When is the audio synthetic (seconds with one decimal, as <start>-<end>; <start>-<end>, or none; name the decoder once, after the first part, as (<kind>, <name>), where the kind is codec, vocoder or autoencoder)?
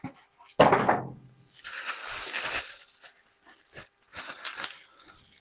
none